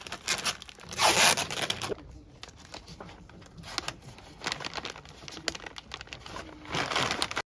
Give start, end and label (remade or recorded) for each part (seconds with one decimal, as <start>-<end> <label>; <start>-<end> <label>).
0.0-7.5 recorded